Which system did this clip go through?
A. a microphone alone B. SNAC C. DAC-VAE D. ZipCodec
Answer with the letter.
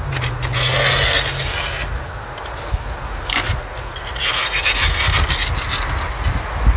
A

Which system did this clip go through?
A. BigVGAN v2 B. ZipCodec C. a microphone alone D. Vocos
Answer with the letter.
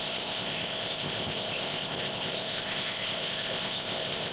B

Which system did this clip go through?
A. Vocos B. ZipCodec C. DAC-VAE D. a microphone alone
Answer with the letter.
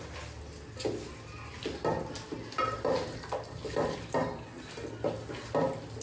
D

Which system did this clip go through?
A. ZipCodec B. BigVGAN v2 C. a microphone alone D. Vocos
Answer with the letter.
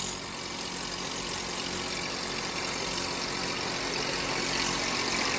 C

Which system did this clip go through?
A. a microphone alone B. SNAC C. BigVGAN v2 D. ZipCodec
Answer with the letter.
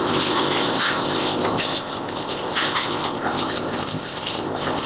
D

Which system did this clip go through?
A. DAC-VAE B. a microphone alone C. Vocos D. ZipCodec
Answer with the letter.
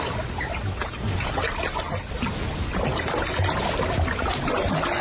B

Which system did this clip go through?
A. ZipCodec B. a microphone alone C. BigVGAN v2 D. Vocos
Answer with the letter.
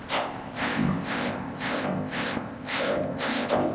A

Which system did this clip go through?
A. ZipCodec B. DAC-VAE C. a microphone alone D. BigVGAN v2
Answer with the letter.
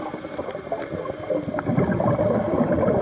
C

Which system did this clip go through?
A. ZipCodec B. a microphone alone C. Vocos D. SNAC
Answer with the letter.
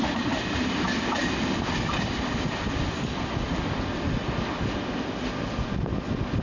B